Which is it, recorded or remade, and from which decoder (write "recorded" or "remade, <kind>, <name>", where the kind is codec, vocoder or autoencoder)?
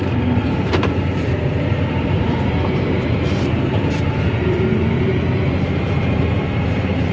remade, vocoder, BigVGAN v2